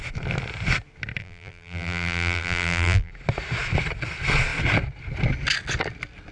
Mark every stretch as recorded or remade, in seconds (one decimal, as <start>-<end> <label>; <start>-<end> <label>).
0.0-1.2 recorded; 1.2-3.1 remade; 3.1-6.3 recorded